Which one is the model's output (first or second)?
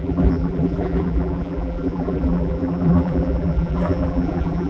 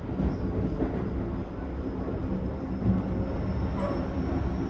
first